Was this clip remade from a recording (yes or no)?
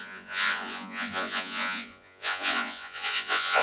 yes